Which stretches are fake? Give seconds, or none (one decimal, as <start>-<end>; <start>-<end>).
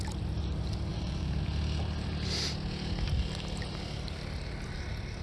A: 0.9-1.4